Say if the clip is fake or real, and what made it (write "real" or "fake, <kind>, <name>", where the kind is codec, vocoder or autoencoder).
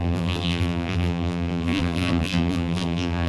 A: fake, vocoder, BigVGAN v2